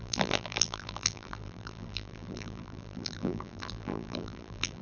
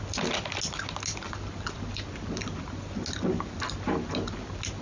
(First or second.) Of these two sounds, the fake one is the first